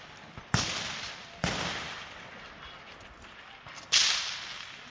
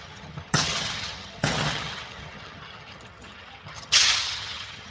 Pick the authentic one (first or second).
first